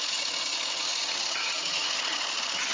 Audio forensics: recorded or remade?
remade